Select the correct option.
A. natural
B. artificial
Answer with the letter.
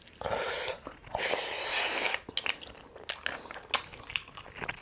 A